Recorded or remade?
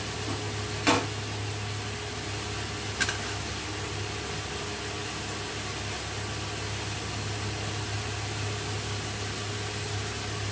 recorded